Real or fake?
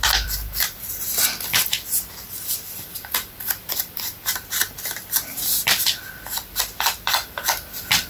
fake